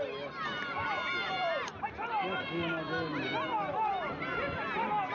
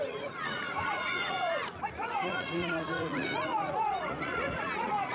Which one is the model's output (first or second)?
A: second